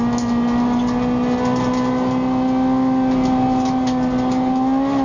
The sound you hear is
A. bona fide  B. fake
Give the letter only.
A